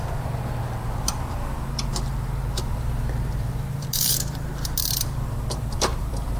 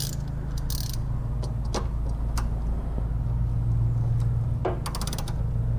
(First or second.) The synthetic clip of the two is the first